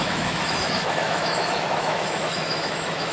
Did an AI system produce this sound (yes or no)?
yes